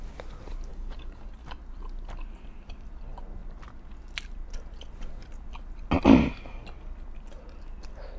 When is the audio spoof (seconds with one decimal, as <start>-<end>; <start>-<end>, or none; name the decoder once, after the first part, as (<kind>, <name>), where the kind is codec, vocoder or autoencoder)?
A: 0.7-1.3 (codec, DAC)